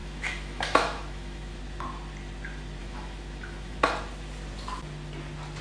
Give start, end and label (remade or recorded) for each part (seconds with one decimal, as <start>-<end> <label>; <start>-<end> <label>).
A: 0.0-1.6 remade; 1.6-2.8 recorded; 2.8-3.8 remade; 3.8-5.6 recorded